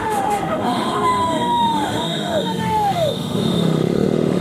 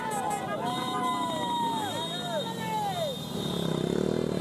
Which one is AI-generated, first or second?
first